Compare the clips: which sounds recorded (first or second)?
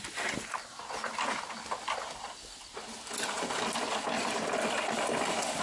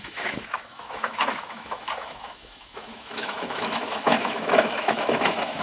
first